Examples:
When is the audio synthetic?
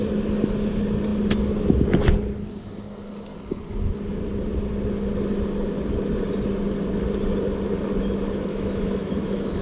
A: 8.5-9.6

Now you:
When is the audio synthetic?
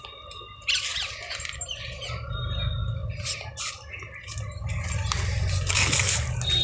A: none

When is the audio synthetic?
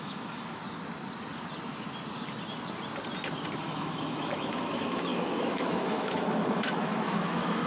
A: 0.0-0.6; 3.6-7.7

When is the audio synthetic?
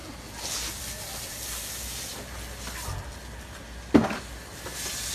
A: none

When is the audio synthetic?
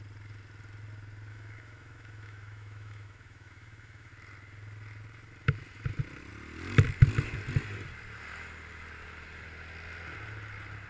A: 1.3-4.1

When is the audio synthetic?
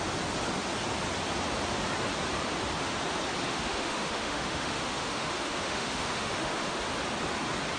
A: 3.5-6.8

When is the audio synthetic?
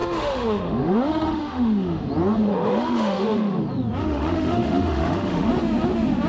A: 0.0-2.1; 2.5-3.6; 4.0-5.5